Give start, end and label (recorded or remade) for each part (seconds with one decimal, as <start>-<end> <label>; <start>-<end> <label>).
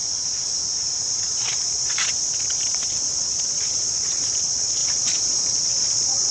0.0-1.2 recorded; 1.2-6.3 remade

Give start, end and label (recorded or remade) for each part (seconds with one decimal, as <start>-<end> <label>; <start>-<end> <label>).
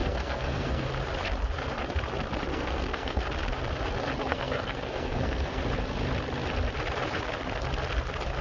0.0-0.9 remade; 0.9-2.5 recorded; 2.5-3.2 remade; 3.2-4.3 recorded; 4.3-5.6 remade; 5.6-8.4 recorded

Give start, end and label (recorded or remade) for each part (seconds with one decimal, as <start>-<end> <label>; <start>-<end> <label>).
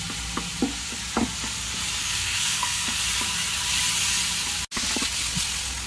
0.0-2.0 recorded; 2.0-3.0 remade; 3.0-5.9 recorded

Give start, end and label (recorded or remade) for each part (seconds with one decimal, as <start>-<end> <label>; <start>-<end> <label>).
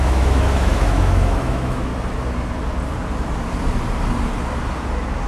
0.0-1.9 remade; 1.9-5.3 recorded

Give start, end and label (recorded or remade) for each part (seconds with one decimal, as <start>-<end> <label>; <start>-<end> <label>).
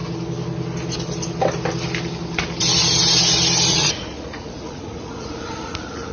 0.0-3.7 recorded; 3.7-6.1 remade